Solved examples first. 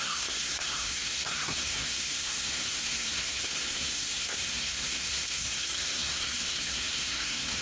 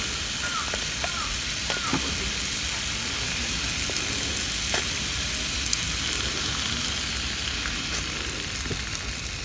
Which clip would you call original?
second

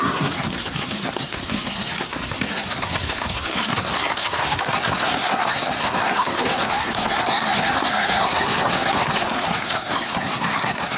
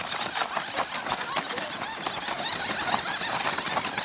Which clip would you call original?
second